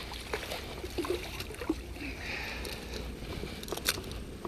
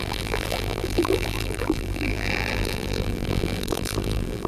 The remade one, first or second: second